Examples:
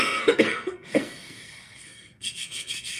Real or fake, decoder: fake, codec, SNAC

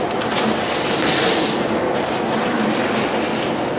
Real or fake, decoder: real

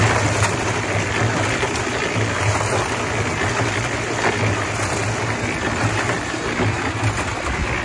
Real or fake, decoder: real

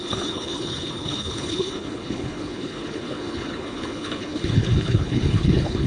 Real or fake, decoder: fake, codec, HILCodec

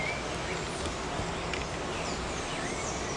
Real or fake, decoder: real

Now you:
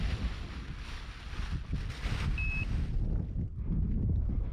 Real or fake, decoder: real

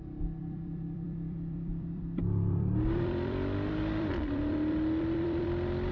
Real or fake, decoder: fake, vocoder, BigVGAN v2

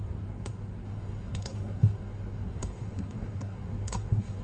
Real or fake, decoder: fake, codec, SNAC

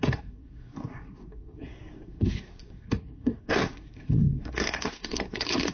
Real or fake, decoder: fake, codec, SNAC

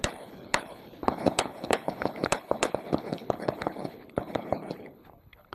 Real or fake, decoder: fake, codec, HILCodec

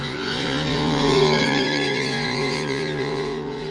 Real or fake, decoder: fake, vocoder, Vocos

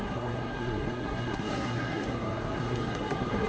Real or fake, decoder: fake, codec, SNAC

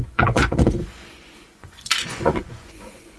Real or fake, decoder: fake, vocoder, Vocos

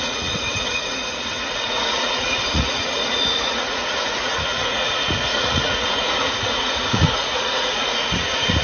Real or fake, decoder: fake, vocoder, Vocos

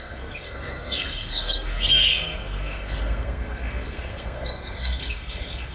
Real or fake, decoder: fake, codec, SNAC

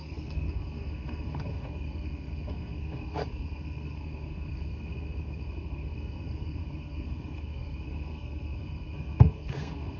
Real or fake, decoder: fake, codec, SNAC